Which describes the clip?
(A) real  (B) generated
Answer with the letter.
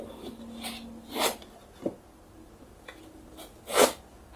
A